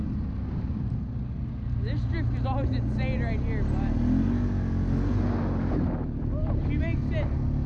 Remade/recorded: recorded